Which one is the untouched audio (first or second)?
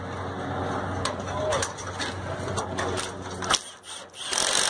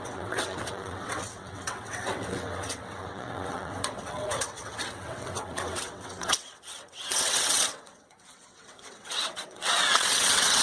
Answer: first